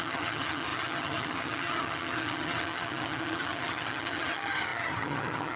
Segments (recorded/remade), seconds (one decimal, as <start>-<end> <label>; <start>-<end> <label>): 0.0-5.6 remade